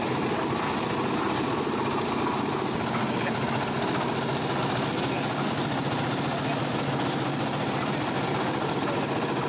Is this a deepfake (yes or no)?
no